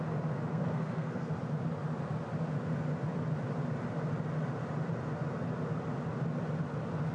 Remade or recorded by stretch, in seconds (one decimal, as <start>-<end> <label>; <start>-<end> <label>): 0.0-0.5 recorded; 0.5-1.3 remade; 1.3-7.1 recorded

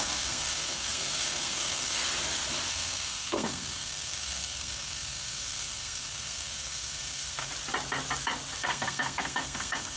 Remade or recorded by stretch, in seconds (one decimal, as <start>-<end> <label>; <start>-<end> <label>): 0.0-2.0 remade; 2.0-2.7 recorded; 2.7-7.5 remade; 7.5-8.6 recorded; 8.6-10.0 remade

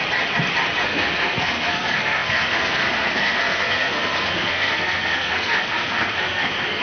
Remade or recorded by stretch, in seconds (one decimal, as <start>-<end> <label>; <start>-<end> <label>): 0.0-0.8 recorded; 0.8-6.8 remade

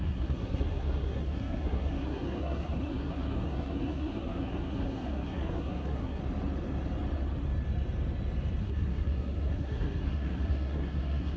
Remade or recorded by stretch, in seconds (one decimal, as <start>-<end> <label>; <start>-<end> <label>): 0.0-6.2 remade; 6.2-8.6 recorded; 8.6-11.4 remade